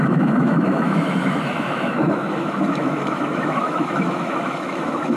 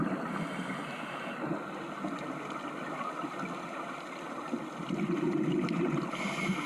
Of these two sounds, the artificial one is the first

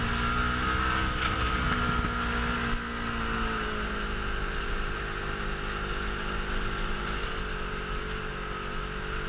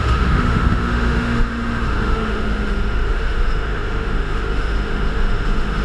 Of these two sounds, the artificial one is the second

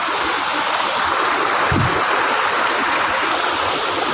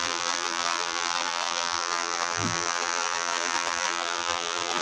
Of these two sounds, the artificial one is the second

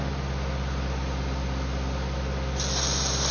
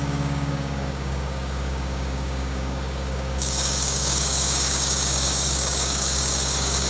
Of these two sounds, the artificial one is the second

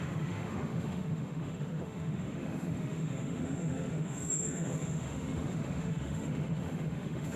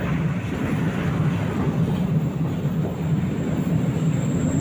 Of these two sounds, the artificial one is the first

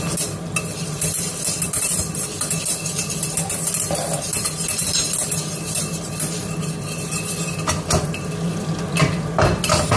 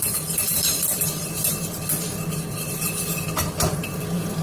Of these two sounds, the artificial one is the second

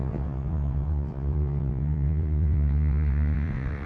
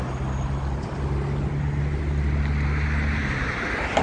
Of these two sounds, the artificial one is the first